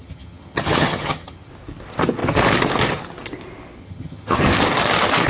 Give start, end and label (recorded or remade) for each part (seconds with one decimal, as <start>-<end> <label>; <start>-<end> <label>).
0.0-1.5 remade; 1.5-3.8 recorded; 3.8-4.4 remade; 4.4-5.3 recorded